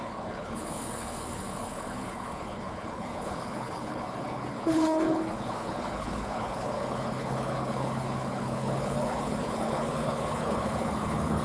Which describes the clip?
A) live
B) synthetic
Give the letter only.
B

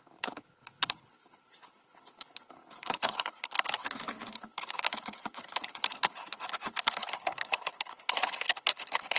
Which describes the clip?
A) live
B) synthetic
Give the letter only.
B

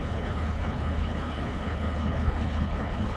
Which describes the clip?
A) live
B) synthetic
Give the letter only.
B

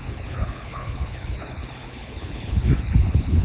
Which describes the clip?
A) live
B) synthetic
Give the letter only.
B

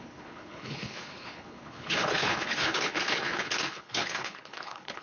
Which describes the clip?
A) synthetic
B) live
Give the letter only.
A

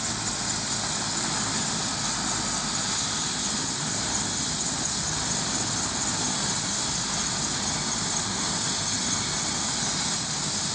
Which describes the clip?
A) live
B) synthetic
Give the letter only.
A